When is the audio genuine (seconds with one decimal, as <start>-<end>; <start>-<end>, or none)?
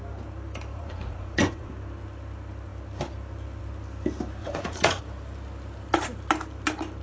0.0-0.7; 1.7-4.4; 5.0-7.0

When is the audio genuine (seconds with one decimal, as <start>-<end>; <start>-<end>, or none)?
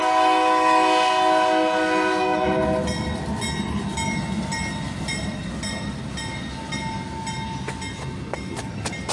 0.0-9.1